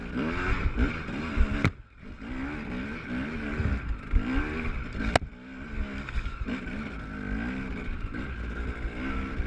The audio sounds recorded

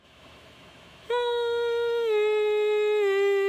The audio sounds remade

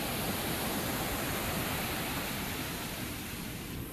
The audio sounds recorded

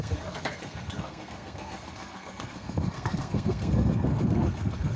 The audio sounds remade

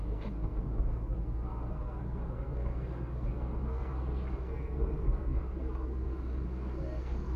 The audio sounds remade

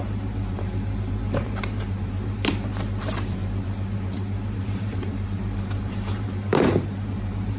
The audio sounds remade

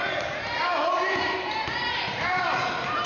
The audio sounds remade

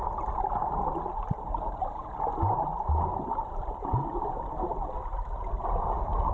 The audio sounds recorded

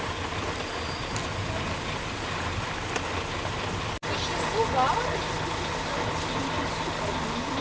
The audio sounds recorded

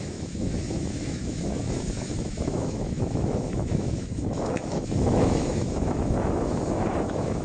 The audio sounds remade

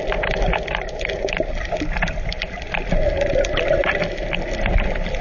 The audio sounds recorded